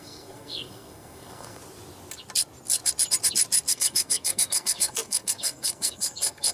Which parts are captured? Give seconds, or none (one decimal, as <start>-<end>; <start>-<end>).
1.6-3.7